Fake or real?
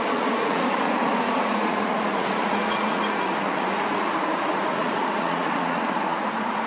fake